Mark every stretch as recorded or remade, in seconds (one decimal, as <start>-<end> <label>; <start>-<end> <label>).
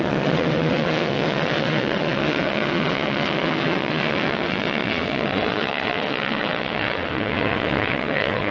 0.0-8.5 remade